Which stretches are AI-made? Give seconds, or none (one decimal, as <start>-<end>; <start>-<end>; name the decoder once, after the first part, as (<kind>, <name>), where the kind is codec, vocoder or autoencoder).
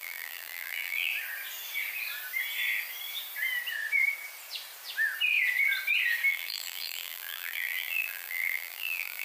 0.0-1.1 (vocoder, BigVGAN v2); 6.3-9.2